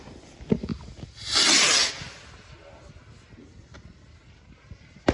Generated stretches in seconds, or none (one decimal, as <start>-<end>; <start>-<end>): none